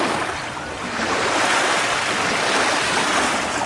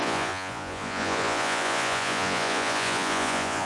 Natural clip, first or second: first